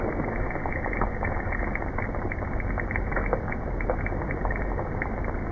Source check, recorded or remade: recorded